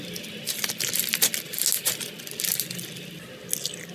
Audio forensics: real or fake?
real